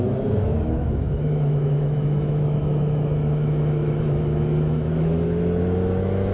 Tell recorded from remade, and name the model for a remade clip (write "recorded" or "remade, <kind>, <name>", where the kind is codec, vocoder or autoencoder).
remade, autoencoder, DAC-VAE